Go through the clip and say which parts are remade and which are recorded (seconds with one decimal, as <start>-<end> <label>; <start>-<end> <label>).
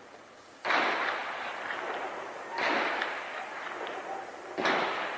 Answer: 0.0-5.2 recorded